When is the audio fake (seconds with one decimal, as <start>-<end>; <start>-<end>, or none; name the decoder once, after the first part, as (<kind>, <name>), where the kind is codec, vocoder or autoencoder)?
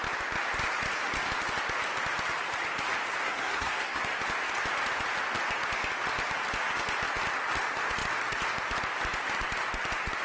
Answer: 3.2-4.0 (codec, SNAC)